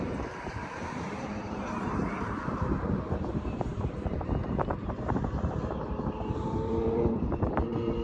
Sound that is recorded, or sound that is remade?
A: remade